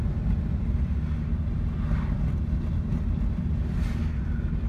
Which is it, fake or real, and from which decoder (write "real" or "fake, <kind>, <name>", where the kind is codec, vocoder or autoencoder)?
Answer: real